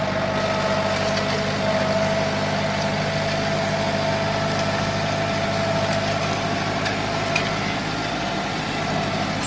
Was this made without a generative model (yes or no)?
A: yes